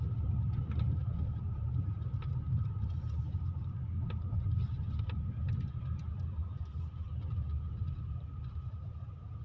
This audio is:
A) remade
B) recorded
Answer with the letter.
B